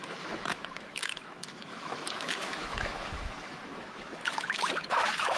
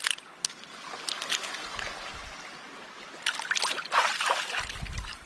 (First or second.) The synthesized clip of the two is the first